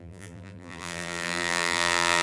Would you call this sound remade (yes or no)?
yes